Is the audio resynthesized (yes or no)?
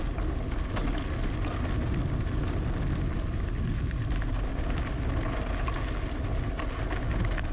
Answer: no